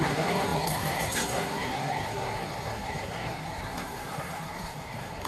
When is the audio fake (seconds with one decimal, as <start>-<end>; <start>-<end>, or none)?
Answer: 0.0-5.3